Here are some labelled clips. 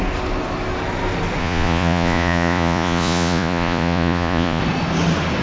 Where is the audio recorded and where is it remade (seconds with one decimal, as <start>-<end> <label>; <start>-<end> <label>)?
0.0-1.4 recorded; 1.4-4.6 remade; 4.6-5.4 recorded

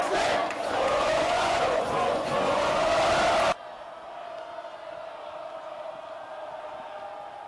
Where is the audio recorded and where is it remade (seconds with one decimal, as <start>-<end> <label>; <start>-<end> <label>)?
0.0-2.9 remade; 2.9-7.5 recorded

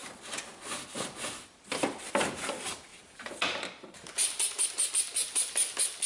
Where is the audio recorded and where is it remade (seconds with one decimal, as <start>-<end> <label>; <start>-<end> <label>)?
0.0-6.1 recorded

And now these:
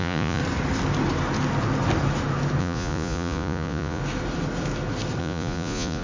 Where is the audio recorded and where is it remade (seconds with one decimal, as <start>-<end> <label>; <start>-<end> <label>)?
0.0-0.4 remade; 0.4-2.6 recorded; 2.6-4.0 remade; 4.0-5.2 recorded; 5.2-6.0 remade

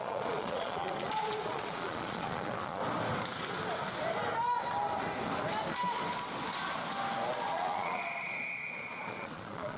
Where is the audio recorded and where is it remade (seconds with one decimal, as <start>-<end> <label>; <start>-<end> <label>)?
0.0-2.8 remade; 2.8-7.3 recorded; 7.3-9.8 remade

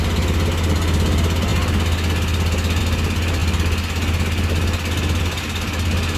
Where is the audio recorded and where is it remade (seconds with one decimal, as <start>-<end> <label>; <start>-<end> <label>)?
0.0-6.2 recorded

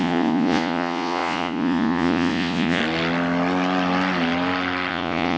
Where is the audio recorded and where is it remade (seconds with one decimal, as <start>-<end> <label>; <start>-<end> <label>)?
0.0-2.8 remade; 2.8-4.9 recorded; 4.9-5.4 remade